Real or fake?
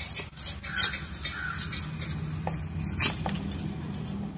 real